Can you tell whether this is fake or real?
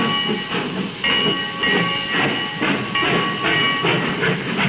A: real